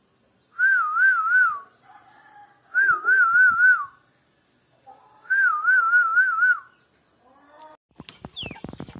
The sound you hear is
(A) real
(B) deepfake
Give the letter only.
A